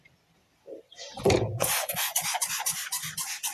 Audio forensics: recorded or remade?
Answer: recorded